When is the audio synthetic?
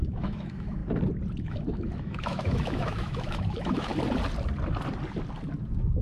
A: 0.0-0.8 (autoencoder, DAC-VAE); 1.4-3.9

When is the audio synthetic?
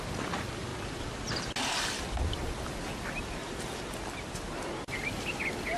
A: none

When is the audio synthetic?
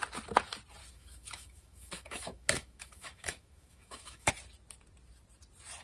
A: 0.8-4.3 (autoencoder, DAC-VAE)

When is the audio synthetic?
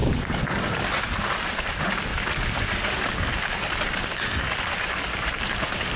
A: none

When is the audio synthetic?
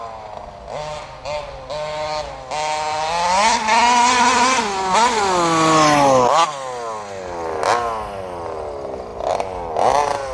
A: none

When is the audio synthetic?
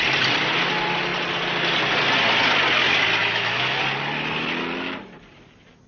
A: 3.2-3.8 (autoencoder, DAC-VAE)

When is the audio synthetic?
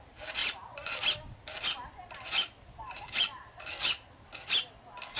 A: none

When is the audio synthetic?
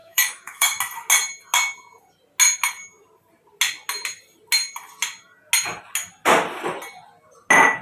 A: 0.0-0.8 (autoencoder, DAC-VAE)